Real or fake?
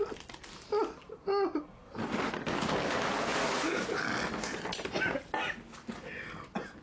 real